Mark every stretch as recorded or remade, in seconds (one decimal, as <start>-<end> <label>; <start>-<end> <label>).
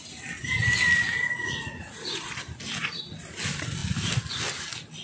0.0-1.2 recorded; 1.2-2.3 remade; 2.3-5.0 recorded